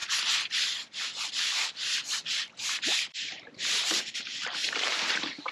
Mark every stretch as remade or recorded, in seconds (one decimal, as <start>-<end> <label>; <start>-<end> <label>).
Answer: 0.0-1.3 recorded; 1.3-5.5 remade